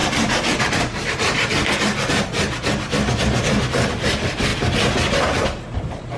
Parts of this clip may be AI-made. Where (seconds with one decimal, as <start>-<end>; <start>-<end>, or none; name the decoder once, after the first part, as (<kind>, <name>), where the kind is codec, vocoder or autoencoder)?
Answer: 0.6-1.5 (vocoder, BigVGAN v2); 4.1-4.5; 5.8-6.2